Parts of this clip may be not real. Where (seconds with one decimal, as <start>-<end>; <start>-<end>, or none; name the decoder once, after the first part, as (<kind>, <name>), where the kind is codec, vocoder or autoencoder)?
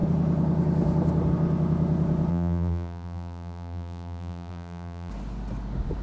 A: 2.3-5.1 (vocoder, BigVGAN v2)